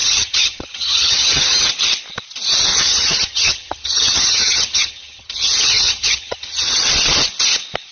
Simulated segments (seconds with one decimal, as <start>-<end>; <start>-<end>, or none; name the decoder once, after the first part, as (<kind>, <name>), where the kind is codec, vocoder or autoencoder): 0.0-1.7 (vocoder, HiFi-GAN); 2.7-6.9